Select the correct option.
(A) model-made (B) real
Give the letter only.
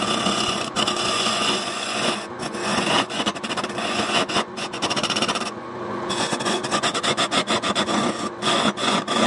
A